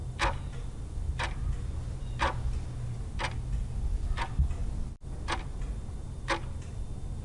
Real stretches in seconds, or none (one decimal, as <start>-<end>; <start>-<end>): 0.0-7.2